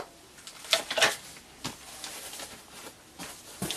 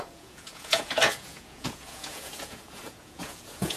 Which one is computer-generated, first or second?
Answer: second